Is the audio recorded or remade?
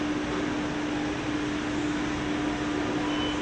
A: recorded